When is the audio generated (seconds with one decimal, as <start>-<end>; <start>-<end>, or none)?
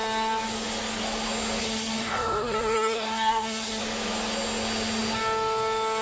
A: 1.6-3.8